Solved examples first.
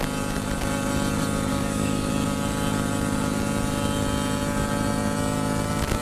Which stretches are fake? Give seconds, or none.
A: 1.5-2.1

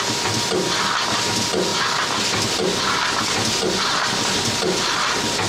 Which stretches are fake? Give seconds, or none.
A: none

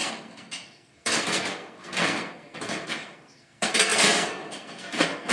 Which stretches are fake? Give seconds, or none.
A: 0.0-5.3

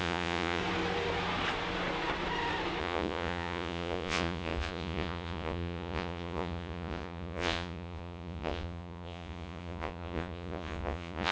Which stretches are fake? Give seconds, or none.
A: 0.0-0.6; 2.8-11.3

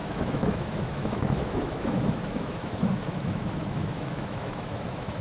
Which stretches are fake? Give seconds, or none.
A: 0.0-5.2

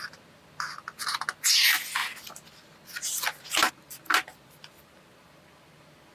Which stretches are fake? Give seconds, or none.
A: none

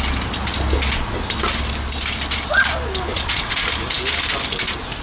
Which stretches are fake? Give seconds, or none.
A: 3.1-3.7